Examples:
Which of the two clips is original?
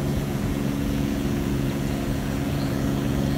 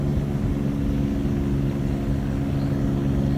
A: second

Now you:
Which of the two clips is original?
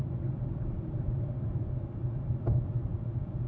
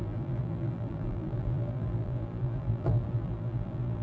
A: first